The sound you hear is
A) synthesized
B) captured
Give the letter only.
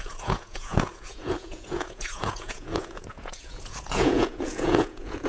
A